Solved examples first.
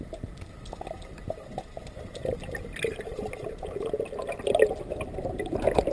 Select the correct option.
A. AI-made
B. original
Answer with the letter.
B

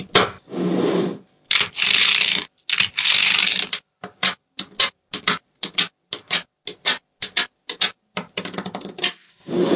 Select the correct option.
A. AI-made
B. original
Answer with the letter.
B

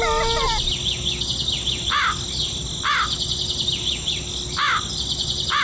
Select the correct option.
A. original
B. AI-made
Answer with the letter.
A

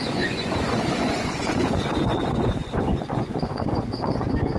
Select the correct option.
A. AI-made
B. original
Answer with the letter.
A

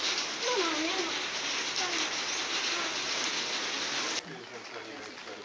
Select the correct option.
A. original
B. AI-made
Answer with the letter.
A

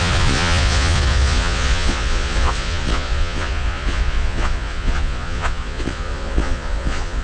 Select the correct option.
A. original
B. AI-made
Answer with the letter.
B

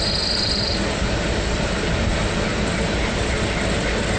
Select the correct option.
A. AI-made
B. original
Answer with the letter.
B